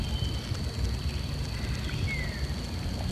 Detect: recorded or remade recorded